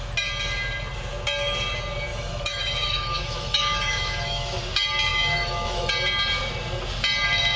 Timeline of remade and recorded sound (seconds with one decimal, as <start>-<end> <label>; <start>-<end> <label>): 0.0-2.1 recorded; 2.1-4.6 remade; 4.6-5.1 recorded; 5.1-5.9 remade; 5.9-7.6 recorded